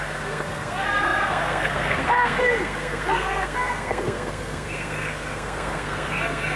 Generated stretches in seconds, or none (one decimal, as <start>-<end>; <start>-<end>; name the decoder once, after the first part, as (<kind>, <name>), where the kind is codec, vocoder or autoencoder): 0.0-6.6 (codec, SNAC)